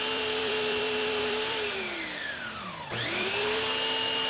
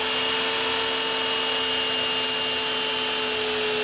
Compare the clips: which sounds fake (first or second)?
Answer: first